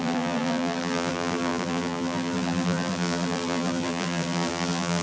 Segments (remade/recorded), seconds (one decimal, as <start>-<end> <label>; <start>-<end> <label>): 0.0-5.0 remade